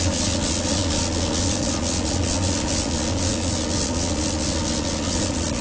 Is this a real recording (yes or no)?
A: no